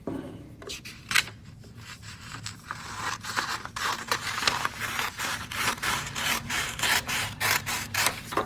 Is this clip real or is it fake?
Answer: fake